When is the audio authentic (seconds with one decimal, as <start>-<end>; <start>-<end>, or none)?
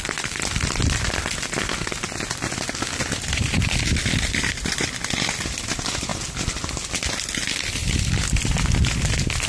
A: 0.0-9.5